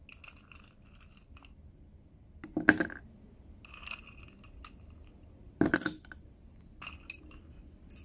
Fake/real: real